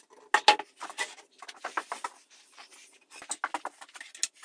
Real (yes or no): yes